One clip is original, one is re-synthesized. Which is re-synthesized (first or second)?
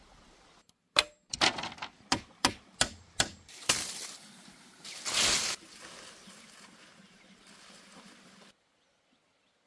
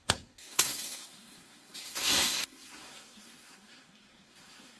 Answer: second